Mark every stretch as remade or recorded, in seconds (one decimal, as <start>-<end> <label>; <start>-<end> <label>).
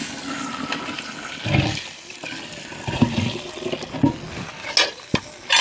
0.0-5.6 recorded